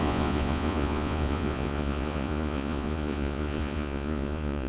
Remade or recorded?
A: remade